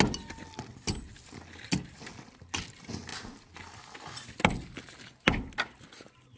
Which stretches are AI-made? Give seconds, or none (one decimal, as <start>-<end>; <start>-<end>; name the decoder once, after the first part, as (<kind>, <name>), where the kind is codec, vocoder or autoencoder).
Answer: none